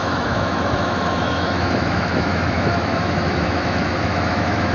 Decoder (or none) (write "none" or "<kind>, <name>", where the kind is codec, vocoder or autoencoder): autoencoder, DAC-VAE